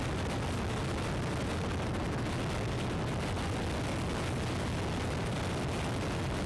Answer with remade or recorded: recorded